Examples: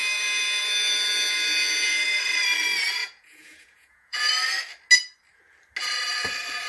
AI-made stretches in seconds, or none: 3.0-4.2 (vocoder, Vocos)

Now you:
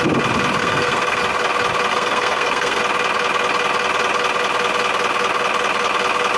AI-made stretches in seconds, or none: 0.6-1.2 (codec, SNAC); 1.9-2.8